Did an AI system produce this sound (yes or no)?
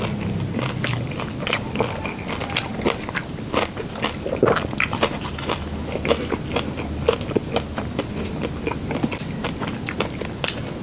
no